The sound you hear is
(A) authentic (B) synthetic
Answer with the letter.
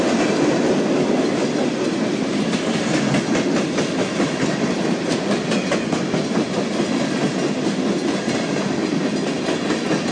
A